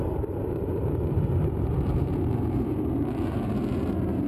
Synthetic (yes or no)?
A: yes